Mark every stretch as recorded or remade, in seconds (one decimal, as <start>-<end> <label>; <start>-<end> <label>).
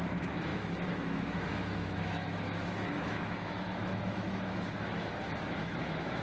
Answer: 0.0-6.2 remade